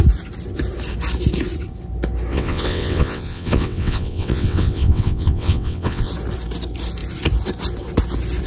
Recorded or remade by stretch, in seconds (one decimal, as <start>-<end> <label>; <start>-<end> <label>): 0.0-2.3 recorded; 2.3-6.1 remade; 6.1-8.5 recorded